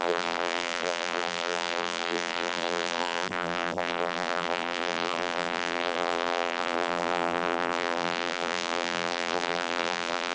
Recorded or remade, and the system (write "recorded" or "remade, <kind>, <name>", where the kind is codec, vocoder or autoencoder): remade, vocoder, BigVGAN v2